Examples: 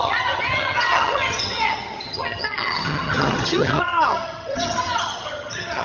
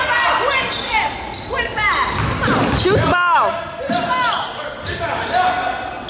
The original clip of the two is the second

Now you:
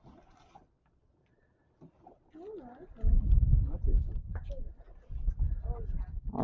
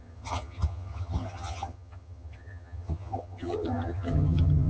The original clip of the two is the first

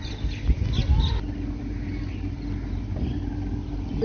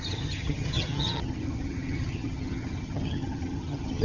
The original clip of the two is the first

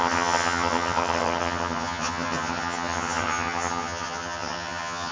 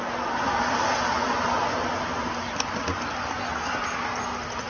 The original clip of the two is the second